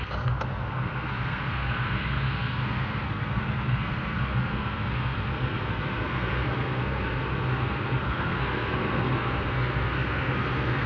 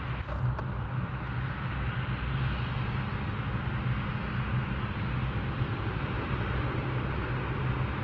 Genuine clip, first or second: second